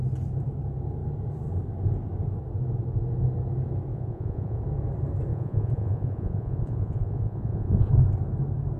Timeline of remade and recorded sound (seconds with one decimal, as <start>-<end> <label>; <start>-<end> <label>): 0.0-3.9 recorded; 3.9-4.6 remade; 4.6-5.3 recorded; 5.3-7.9 remade; 7.9-8.8 recorded

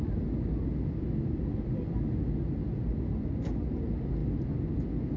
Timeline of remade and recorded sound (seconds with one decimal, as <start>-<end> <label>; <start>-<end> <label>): 0.0-5.2 recorded

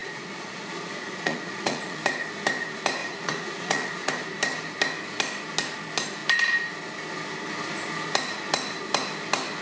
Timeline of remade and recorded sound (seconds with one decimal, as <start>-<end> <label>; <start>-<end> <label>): 0.0-2.0 remade; 2.0-3.0 recorded; 3.0-4.1 remade; 4.1-9.6 recorded

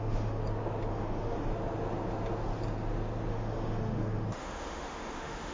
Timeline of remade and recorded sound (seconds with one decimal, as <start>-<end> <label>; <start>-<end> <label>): 0.0-0.4 remade; 0.4-0.9 recorded; 0.9-1.5 remade; 1.5-3.3 recorded; 3.3-5.5 remade